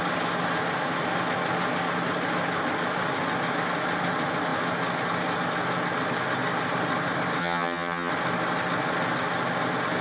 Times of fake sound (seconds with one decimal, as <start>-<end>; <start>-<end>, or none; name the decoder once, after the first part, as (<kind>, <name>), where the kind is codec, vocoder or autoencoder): 7.4-8.1 (vocoder, HiFi-GAN)